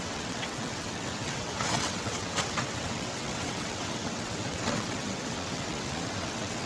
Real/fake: fake